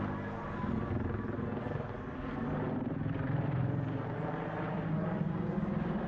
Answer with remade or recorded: recorded